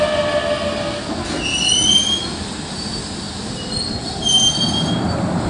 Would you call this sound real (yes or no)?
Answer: yes